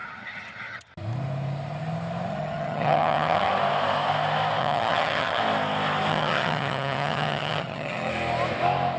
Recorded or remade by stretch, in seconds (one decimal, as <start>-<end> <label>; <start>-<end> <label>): 0.0-0.9 remade; 0.9-2.3 recorded; 2.3-3.5 remade; 3.5-4.6 recorded; 4.6-5.4 remade; 5.4-6.1 recorded; 6.1-8.1 remade; 8.1-9.0 recorded